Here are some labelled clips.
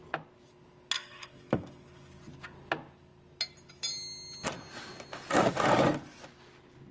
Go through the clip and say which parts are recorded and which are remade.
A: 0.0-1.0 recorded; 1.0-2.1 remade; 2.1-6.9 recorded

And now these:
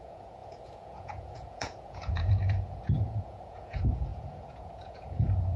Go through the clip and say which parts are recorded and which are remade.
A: 0.0-5.6 remade

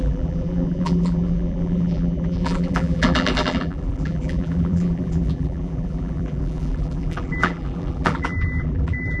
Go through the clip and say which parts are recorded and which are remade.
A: 0.0-9.2 remade